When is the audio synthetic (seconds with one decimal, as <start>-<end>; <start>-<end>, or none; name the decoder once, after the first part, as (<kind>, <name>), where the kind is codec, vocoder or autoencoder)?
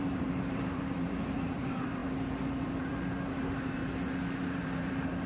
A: 0.0-5.3 (vocoder, BigVGAN v2)